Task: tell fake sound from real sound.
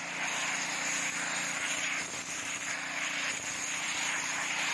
fake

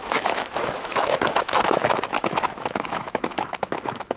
fake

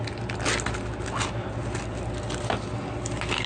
real